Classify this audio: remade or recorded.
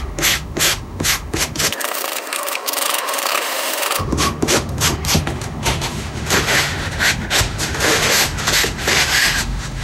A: remade